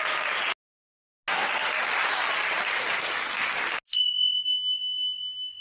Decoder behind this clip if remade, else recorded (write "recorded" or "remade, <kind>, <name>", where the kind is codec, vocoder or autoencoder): recorded